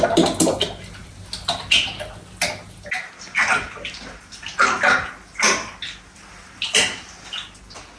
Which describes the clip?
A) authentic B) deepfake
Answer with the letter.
A